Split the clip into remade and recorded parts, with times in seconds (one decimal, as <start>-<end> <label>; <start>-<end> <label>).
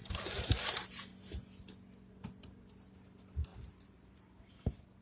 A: 0.0-0.7 remade; 0.7-3.5 recorded; 3.5-4.5 remade; 4.5-5.0 recorded